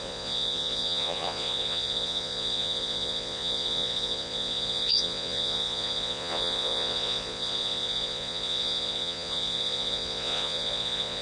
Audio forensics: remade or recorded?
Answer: remade